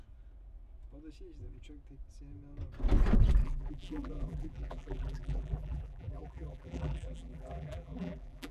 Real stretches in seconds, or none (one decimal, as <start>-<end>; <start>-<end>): 0.0-3.4